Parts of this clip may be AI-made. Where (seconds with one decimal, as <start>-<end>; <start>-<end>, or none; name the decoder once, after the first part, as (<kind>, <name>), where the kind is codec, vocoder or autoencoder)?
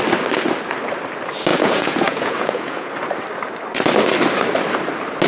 1.5-2.9 (vocoder, Vocos)